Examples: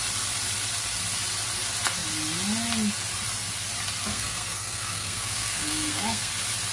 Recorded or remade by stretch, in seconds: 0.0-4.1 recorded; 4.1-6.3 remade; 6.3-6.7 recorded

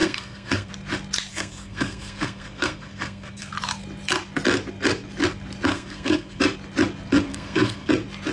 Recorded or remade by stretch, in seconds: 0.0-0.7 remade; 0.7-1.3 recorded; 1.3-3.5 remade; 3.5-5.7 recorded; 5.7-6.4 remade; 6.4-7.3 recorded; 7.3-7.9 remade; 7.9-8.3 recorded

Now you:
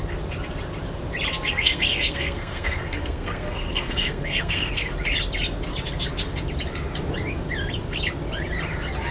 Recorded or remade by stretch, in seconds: 0.0-1.5 recorded; 1.5-4.9 remade; 4.9-9.1 recorded